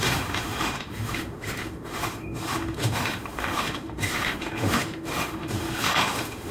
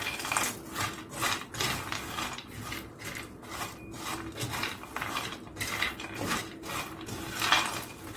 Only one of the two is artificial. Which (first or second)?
first